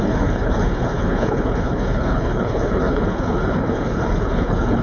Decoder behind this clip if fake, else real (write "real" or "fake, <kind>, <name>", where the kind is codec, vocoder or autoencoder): fake, codec, HILCodec